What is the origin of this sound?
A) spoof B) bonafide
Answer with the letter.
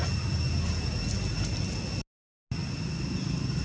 B